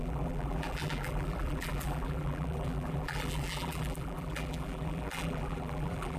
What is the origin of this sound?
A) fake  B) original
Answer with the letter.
A